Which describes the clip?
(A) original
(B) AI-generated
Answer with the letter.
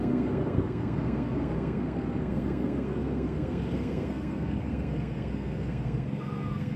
B